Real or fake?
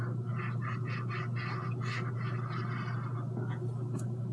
real